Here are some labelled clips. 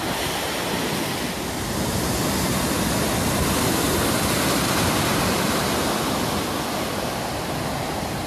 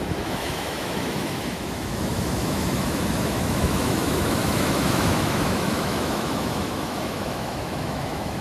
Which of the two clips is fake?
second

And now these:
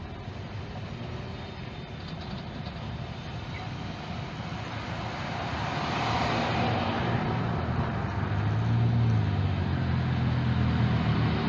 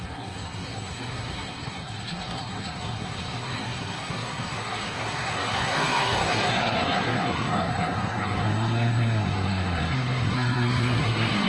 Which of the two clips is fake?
second